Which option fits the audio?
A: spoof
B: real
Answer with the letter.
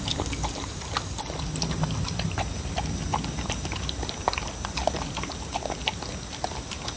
B